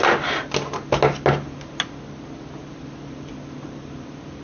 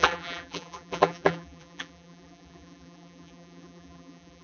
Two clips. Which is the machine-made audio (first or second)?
second